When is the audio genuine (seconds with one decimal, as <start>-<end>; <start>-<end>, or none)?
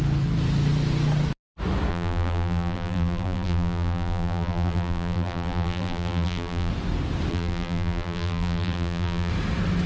0.0-1.9; 6.7-7.3; 9.3-9.9